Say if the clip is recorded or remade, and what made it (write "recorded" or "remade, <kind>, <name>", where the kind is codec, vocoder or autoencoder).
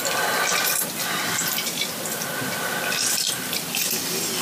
recorded